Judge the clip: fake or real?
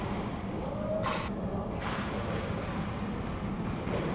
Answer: real